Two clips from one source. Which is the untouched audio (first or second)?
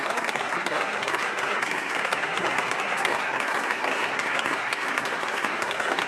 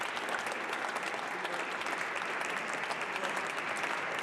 second